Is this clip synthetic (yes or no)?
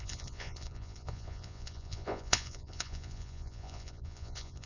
yes